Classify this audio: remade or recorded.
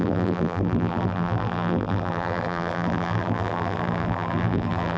remade